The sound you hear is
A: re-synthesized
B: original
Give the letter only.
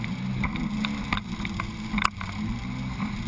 B